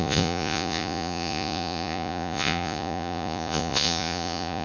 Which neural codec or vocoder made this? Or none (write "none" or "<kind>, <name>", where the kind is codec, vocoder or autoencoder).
vocoder, Vocos